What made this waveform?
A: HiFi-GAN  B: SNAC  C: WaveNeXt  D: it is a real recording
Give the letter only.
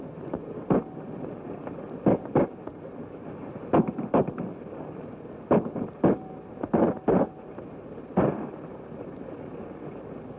D